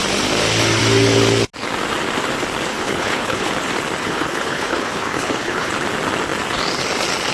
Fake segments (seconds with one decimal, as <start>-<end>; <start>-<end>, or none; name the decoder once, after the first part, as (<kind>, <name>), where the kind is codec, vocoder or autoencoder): 2.7-3.5 (codec, HILCodec); 4.0-5.7